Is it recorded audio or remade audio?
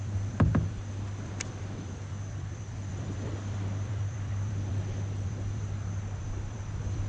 remade